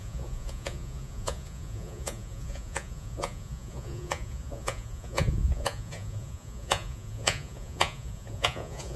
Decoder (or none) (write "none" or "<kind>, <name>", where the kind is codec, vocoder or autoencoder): vocoder, Vocos